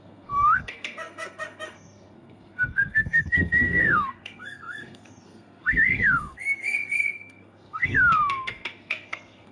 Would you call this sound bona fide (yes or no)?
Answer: no